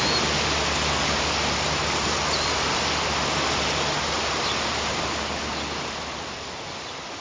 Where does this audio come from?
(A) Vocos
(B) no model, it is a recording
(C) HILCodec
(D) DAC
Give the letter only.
B